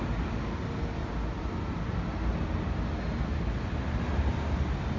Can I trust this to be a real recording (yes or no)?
yes